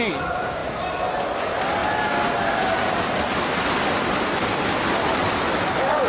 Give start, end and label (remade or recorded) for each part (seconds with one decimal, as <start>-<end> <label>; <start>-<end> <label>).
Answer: 0.0-6.1 recorded